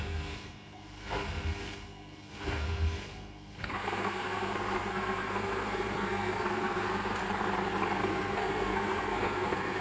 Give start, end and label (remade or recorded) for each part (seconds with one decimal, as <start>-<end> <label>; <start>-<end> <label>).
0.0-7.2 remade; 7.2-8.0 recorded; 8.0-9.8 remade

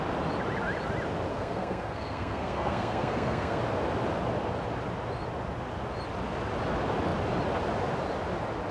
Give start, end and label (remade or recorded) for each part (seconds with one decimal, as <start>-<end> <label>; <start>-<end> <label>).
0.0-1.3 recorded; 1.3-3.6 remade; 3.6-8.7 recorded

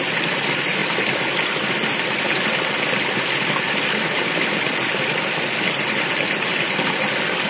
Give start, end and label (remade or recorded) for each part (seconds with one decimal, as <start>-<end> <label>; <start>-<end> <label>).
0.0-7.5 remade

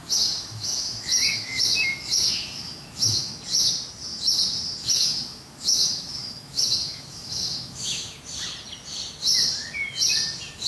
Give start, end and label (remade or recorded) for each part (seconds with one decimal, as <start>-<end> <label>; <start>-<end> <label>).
0.0-3.3 remade; 3.3-4.8 recorded; 4.8-8.2 remade; 8.2-10.7 recorded

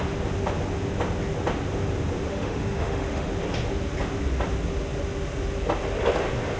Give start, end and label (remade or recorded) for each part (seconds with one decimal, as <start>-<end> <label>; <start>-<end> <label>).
0.0-2.3 recorded; 2.3-3.3 remade; 3.3-6.6 recorded

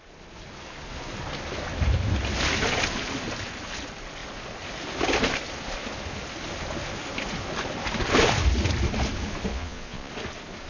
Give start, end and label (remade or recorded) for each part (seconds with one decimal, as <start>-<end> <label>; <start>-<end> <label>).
0.0-9.5 recorded; 9.5-10.1 remade; 10.1-10.7 recorded

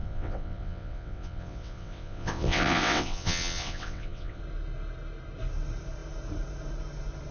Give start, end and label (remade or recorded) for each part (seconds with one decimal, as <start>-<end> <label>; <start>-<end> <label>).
0.0-4.4 remade; 4.4-7.3 recorded

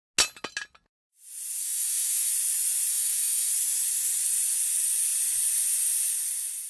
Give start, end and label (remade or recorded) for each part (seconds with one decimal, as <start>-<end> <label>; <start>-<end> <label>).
0.0-1.6 recorded; 1.6-2.3 remade; 2.3-2.9 recorded; 2.9-3.5 remade; 3.5-6.7 recorded